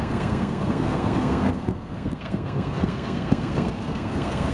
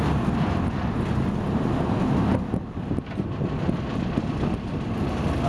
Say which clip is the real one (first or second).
second